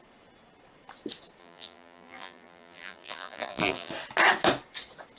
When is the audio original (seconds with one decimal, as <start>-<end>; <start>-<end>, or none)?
0.0-1.4; 3.9-5.2